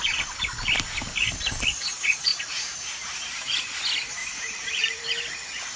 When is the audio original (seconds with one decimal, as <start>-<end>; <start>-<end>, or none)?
0.0-2.3; 3.8-4.2; 5.0-5.8